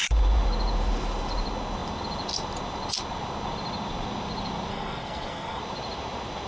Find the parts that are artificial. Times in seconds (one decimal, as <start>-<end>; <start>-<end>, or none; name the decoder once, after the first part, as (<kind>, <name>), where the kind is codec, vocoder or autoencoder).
4.7-5.6 (codec, SNAC)